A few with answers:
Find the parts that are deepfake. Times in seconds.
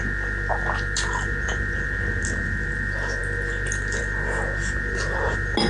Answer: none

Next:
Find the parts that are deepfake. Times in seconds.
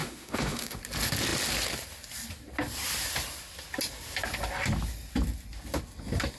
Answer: 0.0-0.8 (autoencoder, DAC-VAE)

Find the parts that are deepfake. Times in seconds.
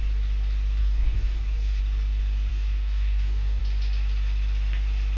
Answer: 0.8-1.8 (codec, DAC); 2.5-3.6